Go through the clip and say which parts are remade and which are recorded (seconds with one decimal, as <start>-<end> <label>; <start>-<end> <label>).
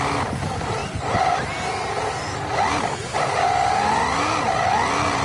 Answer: 0.0-5.2 recorded